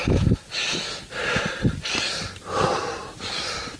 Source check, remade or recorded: recorded